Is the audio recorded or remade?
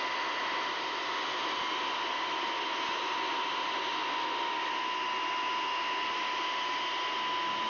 recorded